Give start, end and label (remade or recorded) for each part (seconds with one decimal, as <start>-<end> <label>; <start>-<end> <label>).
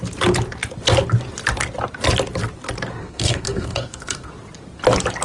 0.0-3.0 recorded; 3.0-4.3 remade; 4.3-5.2 recorded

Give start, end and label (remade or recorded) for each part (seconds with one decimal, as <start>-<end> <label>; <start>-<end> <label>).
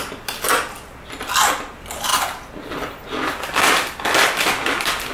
0.0-5.1 recorded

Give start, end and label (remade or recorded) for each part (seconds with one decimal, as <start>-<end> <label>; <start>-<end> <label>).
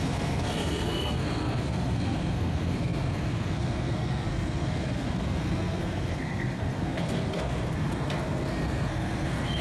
0.0-9.6 remade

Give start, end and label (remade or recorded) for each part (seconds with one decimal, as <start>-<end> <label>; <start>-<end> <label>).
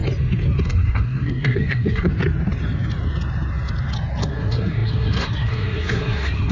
0.0-0.6 recorded; 0.6-2.1 remade; 2.1-4.2 recorded; 4.2-6.5 remade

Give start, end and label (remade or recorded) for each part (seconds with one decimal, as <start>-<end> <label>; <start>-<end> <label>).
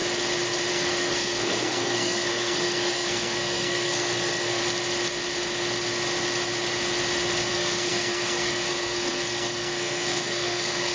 0.0-0.7 recorded; 0.7-4.6 remade; 4.6-7.5 recorded; 7.5-10.9 remade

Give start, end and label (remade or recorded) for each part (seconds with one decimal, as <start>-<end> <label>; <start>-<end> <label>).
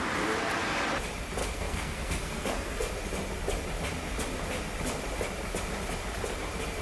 0.0-1.4 recorded; 1.4-2.9 remade; 2.9-6.8 recorded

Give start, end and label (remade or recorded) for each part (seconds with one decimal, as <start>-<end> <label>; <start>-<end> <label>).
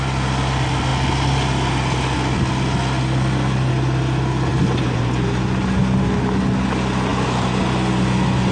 0.0-8.5 recorded